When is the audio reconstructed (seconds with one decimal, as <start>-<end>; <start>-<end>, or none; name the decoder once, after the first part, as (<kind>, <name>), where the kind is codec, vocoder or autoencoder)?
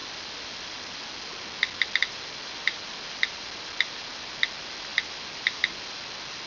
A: none